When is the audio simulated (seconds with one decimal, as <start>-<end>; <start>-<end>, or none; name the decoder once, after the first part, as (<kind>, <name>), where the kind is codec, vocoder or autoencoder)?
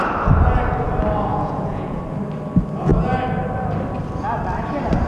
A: 1.3-2.0 (vocoder, Vocos)